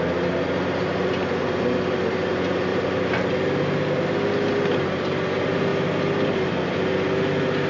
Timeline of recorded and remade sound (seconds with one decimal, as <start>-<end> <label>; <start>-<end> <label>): 0.0-2.7 recorded; 2.7-3.3 remade; 3.3-7.7 recorded